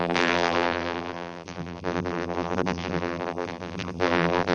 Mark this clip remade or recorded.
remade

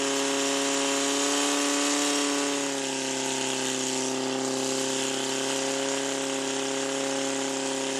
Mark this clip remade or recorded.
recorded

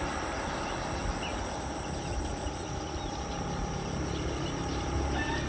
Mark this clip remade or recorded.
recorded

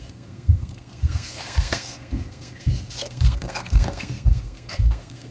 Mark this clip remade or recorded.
remade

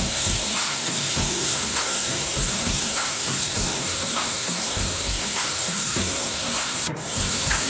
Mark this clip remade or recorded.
remade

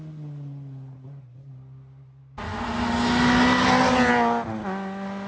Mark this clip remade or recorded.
recorded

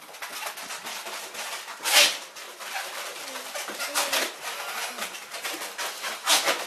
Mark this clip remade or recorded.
recorded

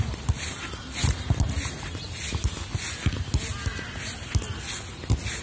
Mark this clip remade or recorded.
recorded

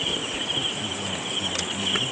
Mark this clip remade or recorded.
recorded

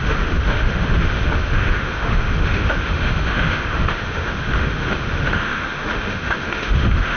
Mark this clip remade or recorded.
remade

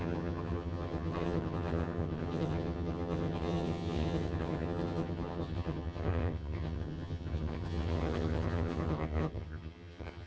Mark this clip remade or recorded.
remade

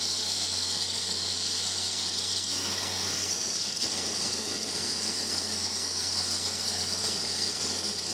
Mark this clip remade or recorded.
remade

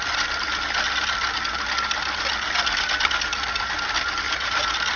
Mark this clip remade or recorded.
recorded